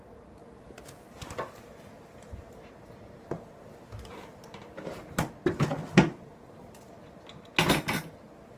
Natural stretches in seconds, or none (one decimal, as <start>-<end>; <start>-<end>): 0.0-8.6